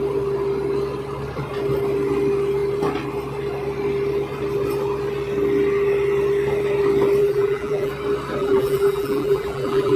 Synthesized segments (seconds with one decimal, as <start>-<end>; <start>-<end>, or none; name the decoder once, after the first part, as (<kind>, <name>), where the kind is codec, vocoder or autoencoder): 7.2-7.9 (vocoder, BigVGAN v2); 8.4-10.0